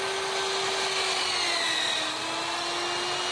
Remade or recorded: recorded